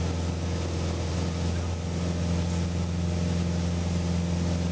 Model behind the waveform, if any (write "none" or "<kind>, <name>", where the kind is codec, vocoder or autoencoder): none